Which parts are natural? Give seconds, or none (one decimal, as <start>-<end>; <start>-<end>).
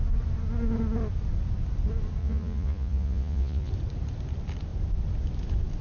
0.0-2.2; 3.7-5.8